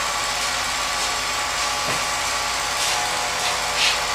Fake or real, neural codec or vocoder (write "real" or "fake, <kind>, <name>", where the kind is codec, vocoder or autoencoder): real